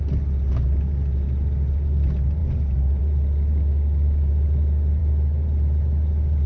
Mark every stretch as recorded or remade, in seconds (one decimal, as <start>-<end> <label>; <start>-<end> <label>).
0.0-3.5 recorded; 3.5-4.3 remade; 4.3-6.5 recorded